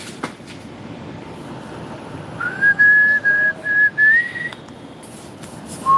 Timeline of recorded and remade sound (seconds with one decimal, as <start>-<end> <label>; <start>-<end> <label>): 0.0-6.0 recorded